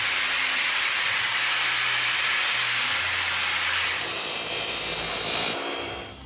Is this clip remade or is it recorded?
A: recorded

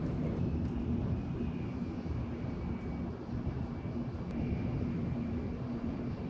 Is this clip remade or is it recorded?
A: recorded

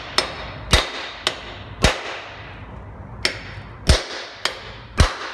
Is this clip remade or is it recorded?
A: recorded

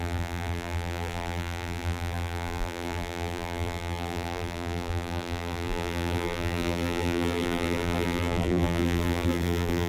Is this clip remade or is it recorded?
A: remade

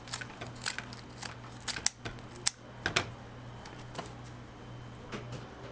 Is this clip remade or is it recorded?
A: recorded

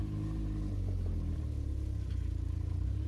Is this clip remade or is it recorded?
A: recorded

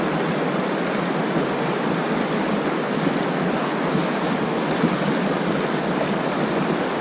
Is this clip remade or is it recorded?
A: recorded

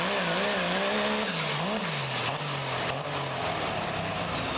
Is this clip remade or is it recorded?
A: recorded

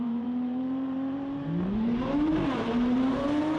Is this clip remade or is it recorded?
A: remade